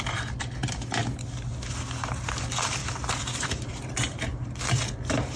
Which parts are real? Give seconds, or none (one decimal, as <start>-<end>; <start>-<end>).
0.6-2.4; 2.8-3.4; 4.3-5.4